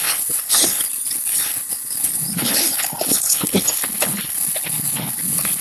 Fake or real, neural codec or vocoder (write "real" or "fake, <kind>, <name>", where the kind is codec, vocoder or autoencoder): fake, codec, HILCodec